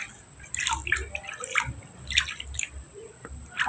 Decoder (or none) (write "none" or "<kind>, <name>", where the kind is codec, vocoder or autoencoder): vocoder, BigVGAN v2